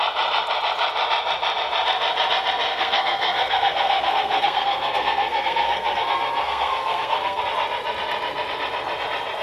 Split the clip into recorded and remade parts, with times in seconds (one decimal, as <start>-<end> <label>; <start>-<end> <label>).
0.0-2.7 recorded; 2.7-7.4 remade; 7.4-9.4 recorded